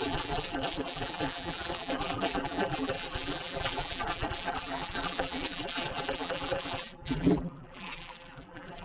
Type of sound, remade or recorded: remade